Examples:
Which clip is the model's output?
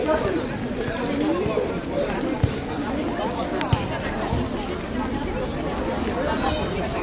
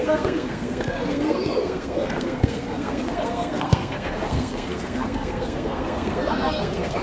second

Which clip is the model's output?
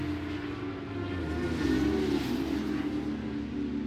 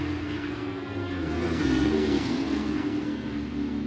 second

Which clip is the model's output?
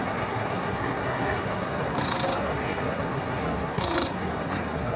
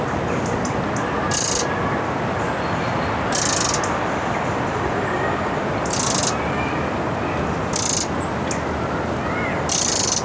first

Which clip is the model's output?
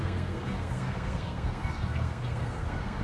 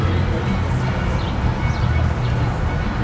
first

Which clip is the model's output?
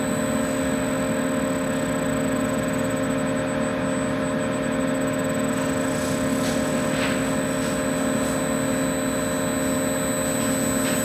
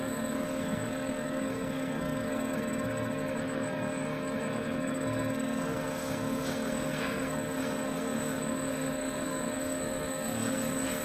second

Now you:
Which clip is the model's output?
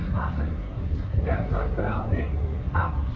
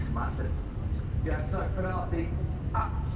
first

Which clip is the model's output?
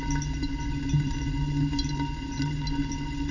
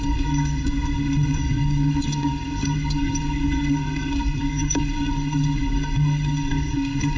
second